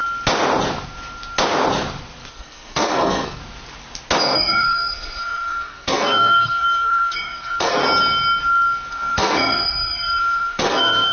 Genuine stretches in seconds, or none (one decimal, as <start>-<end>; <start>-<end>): 0.0-2.3; 3.4-4.2; 7.8-8.9